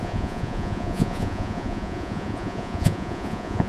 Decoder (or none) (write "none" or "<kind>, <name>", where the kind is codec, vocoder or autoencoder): vocoder, Vocos